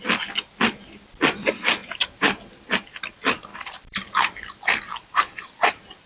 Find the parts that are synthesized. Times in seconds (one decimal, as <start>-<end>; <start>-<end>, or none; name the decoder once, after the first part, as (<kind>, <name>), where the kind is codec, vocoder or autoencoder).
1.8-2.4 (vocoder, BigVGAN v2); 3.5-4.5; 4.9-6.1